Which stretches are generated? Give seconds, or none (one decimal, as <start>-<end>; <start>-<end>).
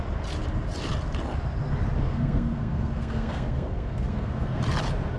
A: 2.0-4.6